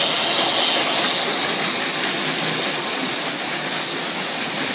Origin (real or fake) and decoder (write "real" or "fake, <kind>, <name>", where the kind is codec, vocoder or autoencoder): real